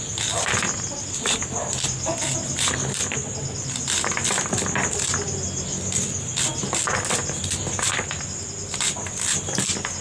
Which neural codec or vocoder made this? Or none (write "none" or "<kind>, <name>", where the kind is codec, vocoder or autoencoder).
none